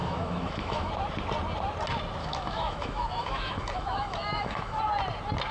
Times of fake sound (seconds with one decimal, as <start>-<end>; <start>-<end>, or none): 0.0-0.9; 2.2-4.8